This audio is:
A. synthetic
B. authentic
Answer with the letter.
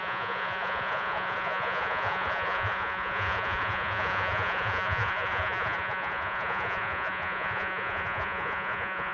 A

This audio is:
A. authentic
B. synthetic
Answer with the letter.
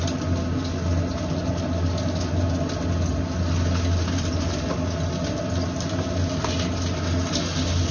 A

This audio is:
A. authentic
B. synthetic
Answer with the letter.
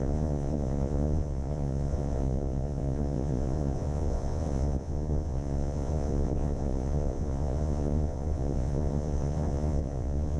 B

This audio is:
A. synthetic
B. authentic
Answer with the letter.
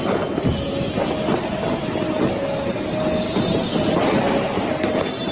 B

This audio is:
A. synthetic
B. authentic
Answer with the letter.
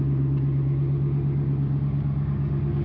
B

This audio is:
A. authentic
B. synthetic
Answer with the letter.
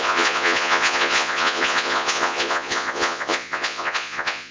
B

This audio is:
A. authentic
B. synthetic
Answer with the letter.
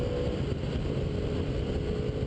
A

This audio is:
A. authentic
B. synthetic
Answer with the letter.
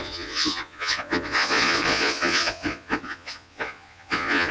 B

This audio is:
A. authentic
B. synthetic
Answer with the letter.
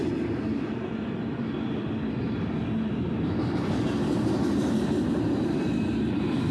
A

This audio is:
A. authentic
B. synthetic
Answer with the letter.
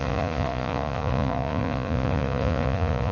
B